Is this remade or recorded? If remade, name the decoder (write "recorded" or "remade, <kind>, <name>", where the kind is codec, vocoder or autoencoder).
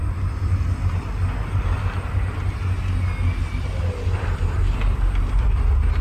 recorded